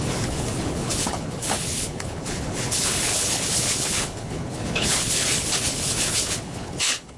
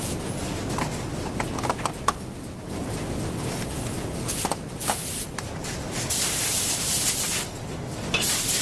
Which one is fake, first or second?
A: first